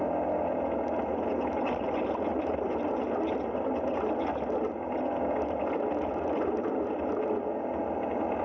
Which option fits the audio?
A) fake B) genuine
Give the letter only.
B